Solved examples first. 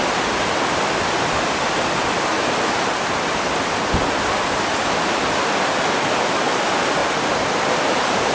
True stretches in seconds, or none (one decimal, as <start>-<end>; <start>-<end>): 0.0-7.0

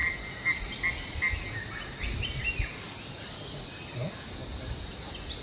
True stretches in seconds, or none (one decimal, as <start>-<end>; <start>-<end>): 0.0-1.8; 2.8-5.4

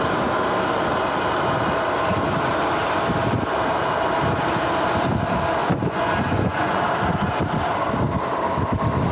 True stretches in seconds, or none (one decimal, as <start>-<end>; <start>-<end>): 0.0-5.6; 6.8-9.1

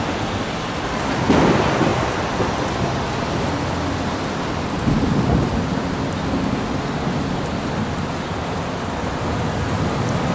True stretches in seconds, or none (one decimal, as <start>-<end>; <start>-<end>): 0.0-10.3

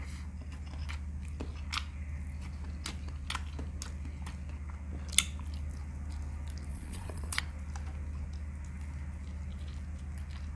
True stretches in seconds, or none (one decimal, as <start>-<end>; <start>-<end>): 0.0-6.7; 7.4-10.6

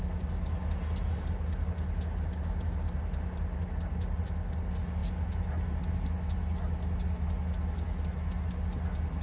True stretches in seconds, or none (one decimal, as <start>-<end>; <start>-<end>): 0.0-9.2